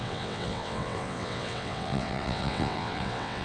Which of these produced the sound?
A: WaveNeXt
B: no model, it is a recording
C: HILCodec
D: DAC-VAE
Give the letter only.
A